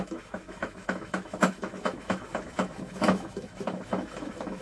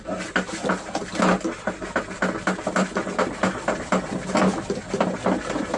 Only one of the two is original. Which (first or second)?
second